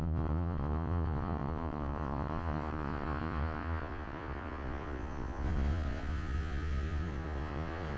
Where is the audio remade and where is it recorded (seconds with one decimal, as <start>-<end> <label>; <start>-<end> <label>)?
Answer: 0.0-8.0 remade